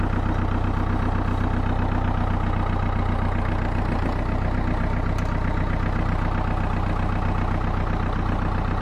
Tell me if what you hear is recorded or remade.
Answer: recorded